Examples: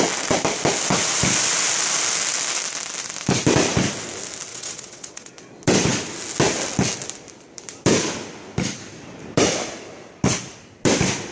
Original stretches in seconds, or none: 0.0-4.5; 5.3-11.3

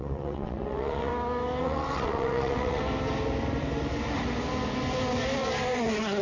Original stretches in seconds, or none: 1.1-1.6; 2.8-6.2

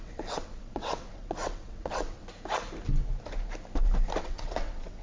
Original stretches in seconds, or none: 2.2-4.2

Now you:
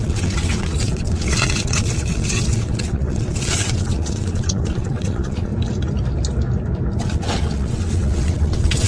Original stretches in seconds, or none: 5.5-7.0

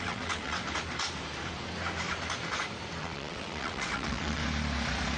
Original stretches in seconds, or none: 0.6-3.0; 4.4-5.2

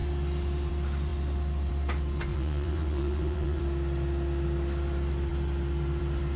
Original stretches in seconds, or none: 0.0-2.3; 3.6-6.4